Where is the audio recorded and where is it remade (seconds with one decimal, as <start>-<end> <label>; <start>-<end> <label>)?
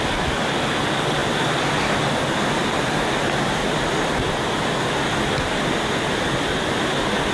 0.0-7.3 recorded